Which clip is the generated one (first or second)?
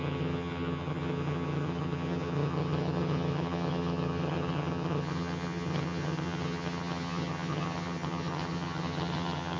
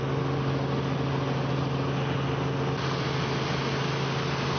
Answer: first